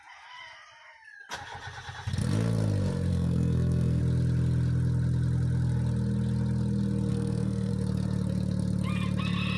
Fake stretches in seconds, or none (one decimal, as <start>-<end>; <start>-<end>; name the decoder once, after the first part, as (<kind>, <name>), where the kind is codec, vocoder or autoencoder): 3.1-4.0 (codec, SNAC); 7.1-7.7